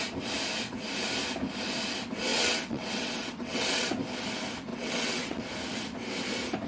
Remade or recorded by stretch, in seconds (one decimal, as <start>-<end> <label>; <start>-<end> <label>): 0.0-2.3 recorded; 2.3-3.9 remade; 3.9-4.7 recorded; 4.7-5.4 remade; 5.4-6.7 recorded